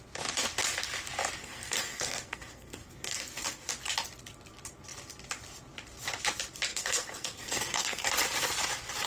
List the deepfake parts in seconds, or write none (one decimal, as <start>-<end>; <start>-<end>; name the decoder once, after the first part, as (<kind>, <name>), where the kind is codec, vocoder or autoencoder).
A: 1.4-3.7 (codec, SNAC); 6.7-8.1